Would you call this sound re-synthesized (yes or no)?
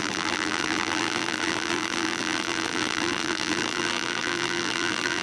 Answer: yes